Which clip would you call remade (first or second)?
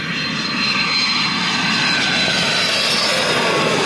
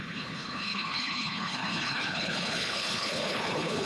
second